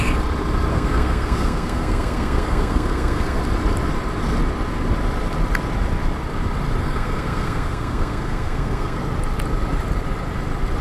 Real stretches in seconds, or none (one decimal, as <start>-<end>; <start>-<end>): 0.0-0.7; 3.4-6.8; 9.0-10.8